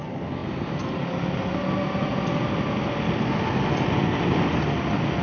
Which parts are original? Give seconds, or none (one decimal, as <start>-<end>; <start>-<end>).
0.0-0.4; 1.0-5.2